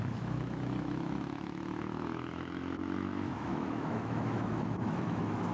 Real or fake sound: fake